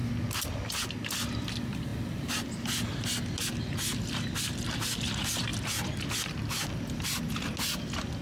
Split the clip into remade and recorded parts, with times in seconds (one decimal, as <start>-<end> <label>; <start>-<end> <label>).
0.0-8.2 recorded